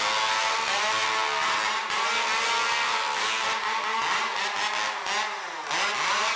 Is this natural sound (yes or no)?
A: yes